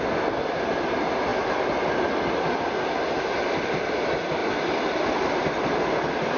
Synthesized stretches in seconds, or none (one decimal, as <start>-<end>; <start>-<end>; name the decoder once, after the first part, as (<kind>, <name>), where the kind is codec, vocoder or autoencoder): none